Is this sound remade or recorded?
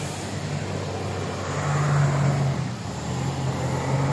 recorded